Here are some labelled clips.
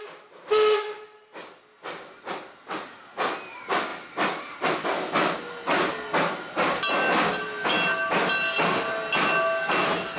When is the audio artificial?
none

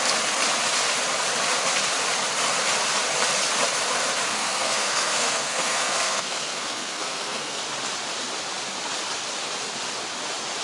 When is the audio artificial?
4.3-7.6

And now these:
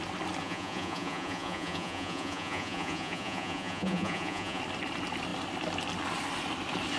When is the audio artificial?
0.4-4.6

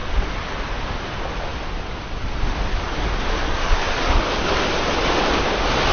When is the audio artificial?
none

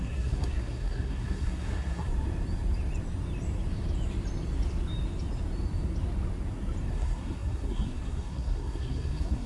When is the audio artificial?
0.0-2.1; 6.9-9.5

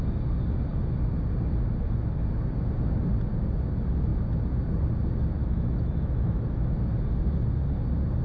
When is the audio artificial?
5.4-6.7

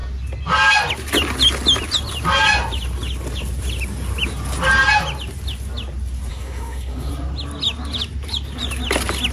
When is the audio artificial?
6.3-7.1